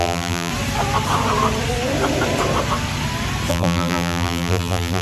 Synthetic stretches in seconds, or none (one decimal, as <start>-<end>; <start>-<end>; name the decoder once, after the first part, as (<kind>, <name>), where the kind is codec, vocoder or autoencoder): 0.0-0.5 (vocoder, BigVGAN v2); 3.5-5.0